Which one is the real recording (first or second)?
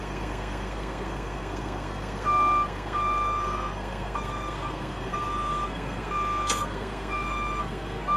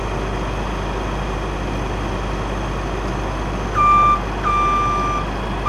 second